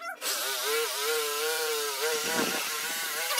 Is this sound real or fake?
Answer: fake